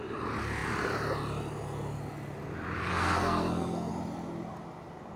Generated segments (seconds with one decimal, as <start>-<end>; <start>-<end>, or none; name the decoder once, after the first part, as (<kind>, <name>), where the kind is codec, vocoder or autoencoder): 2.9-3.9 (codec, SNAC)